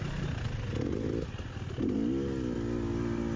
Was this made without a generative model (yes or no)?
yes